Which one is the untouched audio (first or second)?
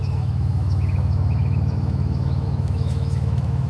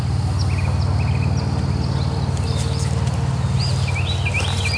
second